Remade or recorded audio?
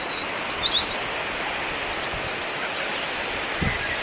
recorded